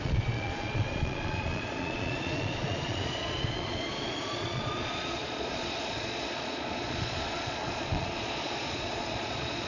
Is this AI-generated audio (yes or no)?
yes